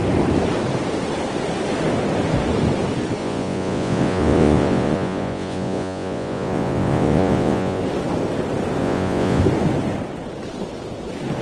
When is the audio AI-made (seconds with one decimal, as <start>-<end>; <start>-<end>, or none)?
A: 3.2-7.8; 8.8-9.4